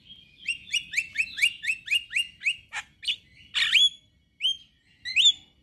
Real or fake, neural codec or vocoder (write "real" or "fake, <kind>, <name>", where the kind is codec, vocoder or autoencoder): real